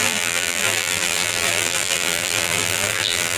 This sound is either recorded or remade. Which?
remade